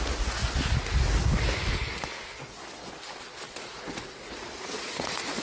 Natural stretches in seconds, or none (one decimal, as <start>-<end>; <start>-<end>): 0.4-3.6